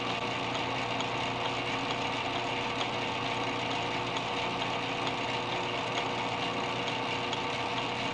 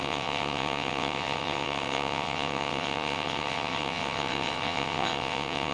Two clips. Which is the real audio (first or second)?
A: first